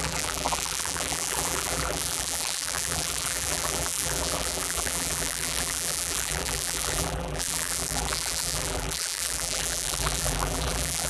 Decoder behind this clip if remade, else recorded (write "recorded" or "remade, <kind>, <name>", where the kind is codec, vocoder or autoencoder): remade, vocoder, BigVGAN v2